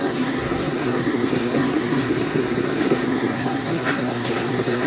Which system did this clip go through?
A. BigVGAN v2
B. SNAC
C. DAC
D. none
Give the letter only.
B